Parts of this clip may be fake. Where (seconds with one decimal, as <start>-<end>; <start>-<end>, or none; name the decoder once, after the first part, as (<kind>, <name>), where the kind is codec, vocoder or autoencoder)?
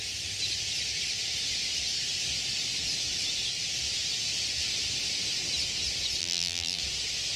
6.2-6.8 (vocoder, BigVGAN v2)